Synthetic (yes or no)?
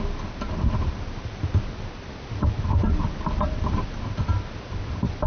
no